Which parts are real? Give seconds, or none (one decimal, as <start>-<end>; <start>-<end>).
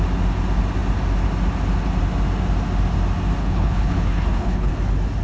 0.0-3.4; 4.7-5.2